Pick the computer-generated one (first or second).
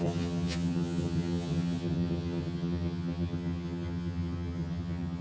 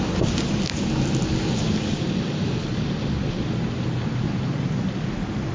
first